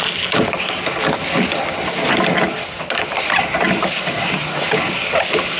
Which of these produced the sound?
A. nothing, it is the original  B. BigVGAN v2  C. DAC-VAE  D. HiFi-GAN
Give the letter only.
A